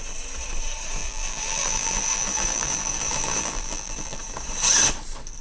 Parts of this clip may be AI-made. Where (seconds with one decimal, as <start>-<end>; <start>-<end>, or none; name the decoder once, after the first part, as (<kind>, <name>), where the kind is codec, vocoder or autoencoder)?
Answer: 1.0-4.2 (vocoder, BigVGAN v2)

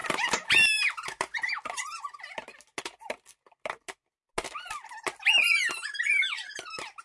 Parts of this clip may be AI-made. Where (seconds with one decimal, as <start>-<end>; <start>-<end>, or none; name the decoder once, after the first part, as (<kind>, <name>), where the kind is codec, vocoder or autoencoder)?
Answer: none